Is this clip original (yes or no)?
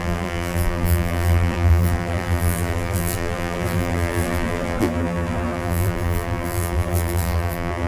no